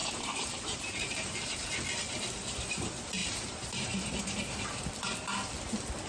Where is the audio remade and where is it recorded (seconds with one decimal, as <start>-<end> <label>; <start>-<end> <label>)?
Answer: 0.0-1.7 remade; 1.7-3.2 recorded; 3.2-4.9 remade; 4.9-6.1 recorded